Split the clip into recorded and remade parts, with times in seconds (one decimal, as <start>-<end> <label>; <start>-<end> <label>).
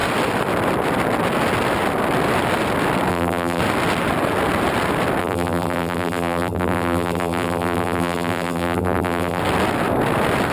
0.0-3.1 recorded; 3.1-3.6 remade; 3.6-5.2 recorded; 5.2-9.4 remade; 9.4-10.5 recorded